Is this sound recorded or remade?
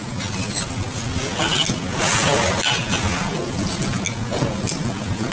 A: recorded